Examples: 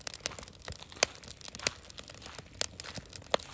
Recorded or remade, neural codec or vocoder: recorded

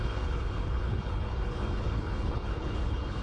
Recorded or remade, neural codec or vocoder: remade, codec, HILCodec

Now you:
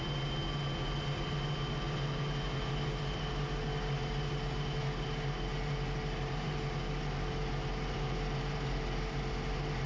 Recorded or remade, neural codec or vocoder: recorded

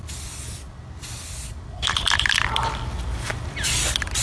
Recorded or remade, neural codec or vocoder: remade, vocoder, BigVGAN v2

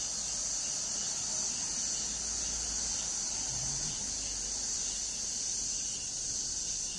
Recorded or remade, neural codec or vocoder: recorded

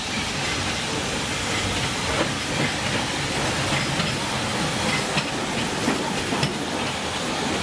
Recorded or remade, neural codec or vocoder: recorded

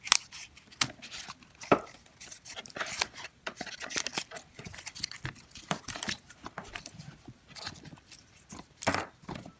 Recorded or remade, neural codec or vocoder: recorded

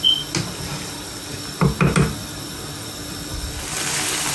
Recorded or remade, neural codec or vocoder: recorded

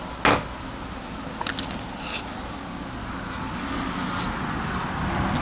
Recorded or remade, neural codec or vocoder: recorded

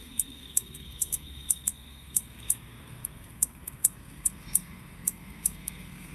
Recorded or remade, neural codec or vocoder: remade, codec, SNAC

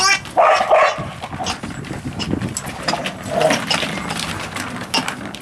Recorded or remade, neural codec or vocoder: recorded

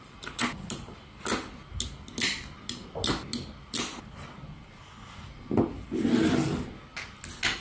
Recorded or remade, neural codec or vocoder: recorded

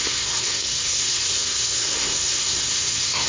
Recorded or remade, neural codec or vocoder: remade, codec, SNAC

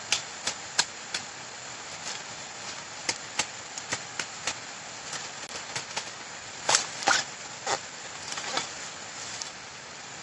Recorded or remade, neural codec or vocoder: recorded